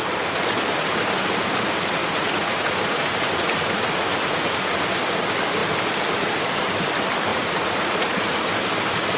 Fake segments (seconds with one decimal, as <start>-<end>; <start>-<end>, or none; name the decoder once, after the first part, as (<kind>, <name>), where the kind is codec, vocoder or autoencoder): 2.0-4.8 (vocoder, Vocos); 7.3-8.4